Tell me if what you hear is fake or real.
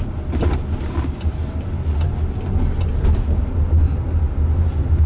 real